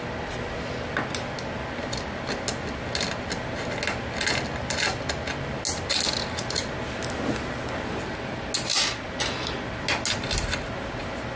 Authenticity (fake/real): real